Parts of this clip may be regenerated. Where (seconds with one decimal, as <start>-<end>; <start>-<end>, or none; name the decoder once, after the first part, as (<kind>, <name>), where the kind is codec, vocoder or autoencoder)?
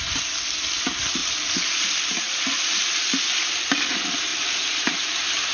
0.0-1.2 (vocoder, BigVGAN v2); 3.3-4.3; 4.9-5.5